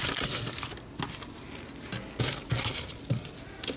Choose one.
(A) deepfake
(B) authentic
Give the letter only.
B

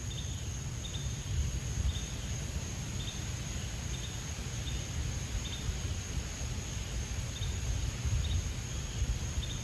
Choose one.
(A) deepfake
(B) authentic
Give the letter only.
B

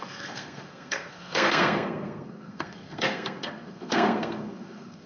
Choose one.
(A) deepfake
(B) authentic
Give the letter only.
A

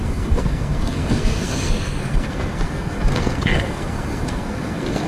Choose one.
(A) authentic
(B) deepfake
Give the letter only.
B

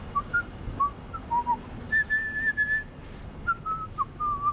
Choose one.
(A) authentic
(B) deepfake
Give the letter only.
A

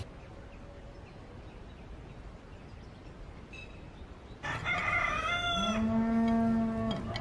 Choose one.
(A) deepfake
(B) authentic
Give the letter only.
B